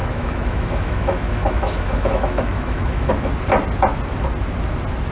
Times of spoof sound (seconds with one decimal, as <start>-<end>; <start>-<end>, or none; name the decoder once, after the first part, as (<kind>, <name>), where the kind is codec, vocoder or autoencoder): 0.0-3.1 (autoencoder, DAC-VAE)